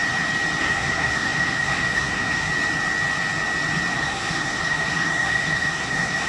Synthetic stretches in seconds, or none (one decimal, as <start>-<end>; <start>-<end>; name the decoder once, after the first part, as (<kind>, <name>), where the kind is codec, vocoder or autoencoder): 0.6-2.5 (codec, SNAC); 3.9-6.3